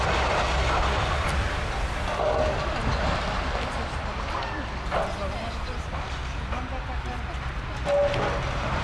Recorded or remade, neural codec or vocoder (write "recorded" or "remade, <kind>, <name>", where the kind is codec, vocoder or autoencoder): recorded